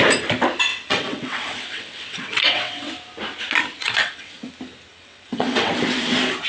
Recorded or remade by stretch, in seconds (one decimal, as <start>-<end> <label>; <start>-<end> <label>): 0.0-0.7 recorded; 0.7-2.9 remade; 2.9-3.8 recorded; 3.8-4.5 remade; 4.5-4.9 recorded; 4.9-5.7 remade; 5.7-6.5 recorded